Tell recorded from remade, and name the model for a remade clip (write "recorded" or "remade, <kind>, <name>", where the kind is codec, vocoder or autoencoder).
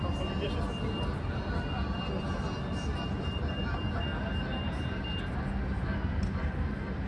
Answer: recorded